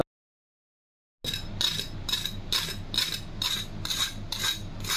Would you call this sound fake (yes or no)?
no